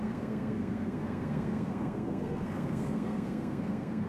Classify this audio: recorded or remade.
remade